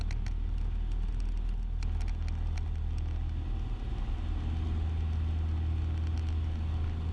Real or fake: real